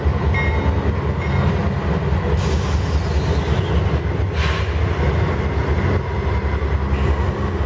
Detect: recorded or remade recorded